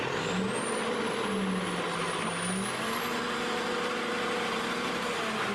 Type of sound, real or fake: real